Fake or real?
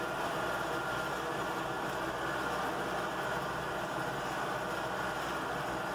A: real